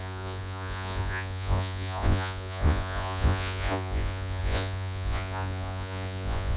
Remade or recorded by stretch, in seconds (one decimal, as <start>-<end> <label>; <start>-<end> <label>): 0.0-6.6 remade